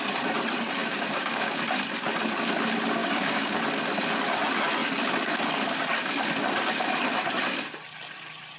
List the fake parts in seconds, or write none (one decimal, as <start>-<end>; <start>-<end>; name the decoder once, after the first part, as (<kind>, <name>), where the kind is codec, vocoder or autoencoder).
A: 0.8-1.6 (codec, DAC); 3.0-3.6